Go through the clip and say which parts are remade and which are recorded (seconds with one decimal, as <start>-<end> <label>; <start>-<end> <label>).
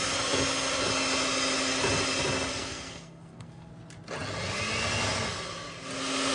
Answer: 0.0-2.5 recorded; 2.5-3.7 remade; 3.7-6.3 recorded